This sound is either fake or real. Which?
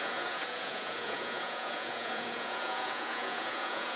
fake